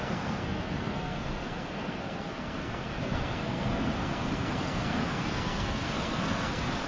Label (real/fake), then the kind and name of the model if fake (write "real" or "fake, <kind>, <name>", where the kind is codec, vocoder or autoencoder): fake, codec, SNAC